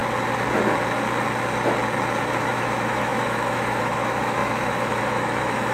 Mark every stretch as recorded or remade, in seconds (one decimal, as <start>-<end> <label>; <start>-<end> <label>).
0.0-2.4 recorded; 2.4-5.7 remade